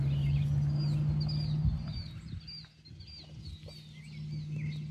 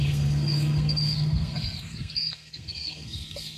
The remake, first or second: second